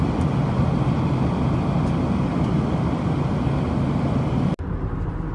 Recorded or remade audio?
recorded